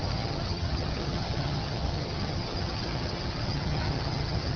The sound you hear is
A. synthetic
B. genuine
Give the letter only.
A